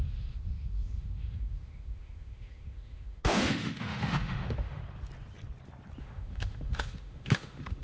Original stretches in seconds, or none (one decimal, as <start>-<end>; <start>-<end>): 4.8-6.0